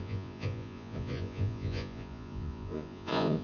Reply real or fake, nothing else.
fake